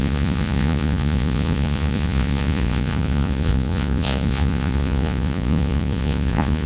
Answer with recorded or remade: remade